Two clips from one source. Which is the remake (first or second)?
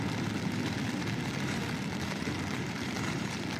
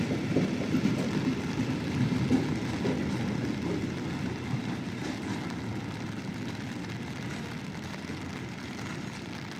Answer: first